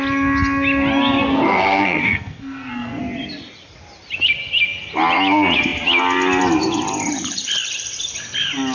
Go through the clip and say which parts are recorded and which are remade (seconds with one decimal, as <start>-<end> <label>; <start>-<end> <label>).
0.0-1.2 recorded; 1.2-3.0 remade; 3.0-8.7 recorded